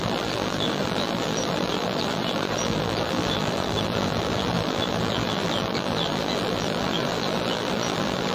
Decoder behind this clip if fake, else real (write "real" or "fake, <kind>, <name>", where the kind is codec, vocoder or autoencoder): fake, vocoder, BigVGAN v2